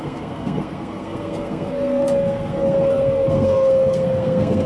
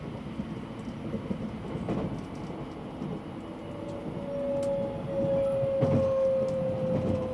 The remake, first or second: first